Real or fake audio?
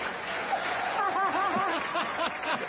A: fake